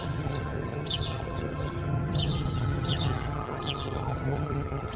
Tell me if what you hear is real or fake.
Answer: fake